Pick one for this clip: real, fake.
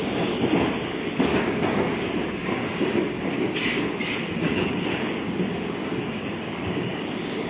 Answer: fake